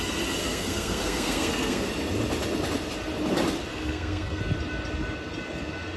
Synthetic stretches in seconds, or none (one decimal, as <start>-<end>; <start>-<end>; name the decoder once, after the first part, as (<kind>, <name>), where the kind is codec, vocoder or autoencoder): 0.4-1.9 (codec, SNAC); 3.7-4.4